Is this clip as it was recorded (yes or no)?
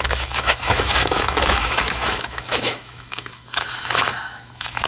no